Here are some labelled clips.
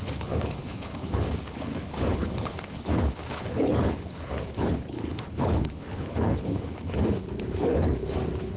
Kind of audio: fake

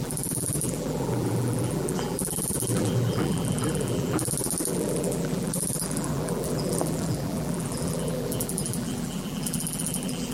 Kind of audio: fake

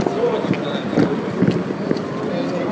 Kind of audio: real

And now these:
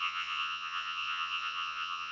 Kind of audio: fake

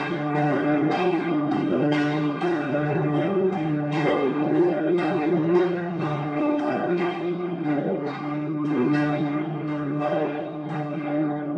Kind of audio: fake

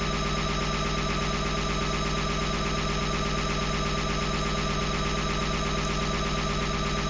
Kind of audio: real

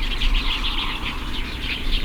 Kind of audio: real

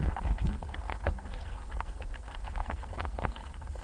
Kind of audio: fake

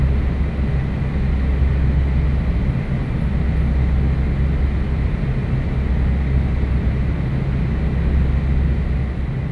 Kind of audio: real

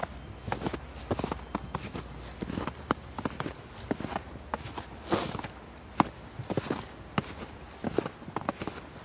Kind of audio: real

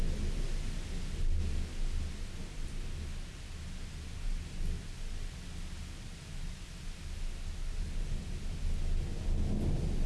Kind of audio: real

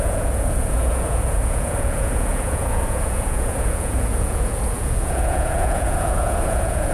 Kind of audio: fake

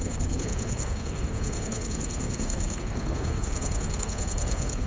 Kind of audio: fake